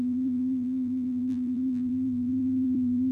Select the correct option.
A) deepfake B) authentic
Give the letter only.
A